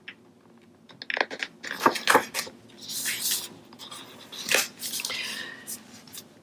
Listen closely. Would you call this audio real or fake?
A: real